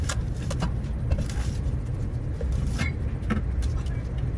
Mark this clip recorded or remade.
recorded